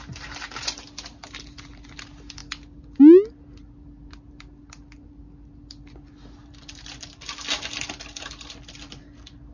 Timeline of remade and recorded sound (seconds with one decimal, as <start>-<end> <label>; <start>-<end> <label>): 0.0-9.5 recorded